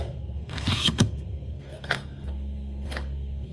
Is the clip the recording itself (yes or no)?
no